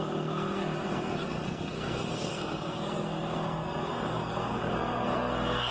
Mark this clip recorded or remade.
remade